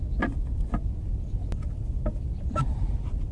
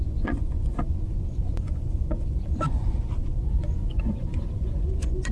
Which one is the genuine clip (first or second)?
first